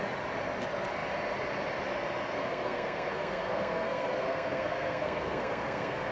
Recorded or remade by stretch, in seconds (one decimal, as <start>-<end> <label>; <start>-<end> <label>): 0.0-2.3 recorded; 2.3-6.1 remade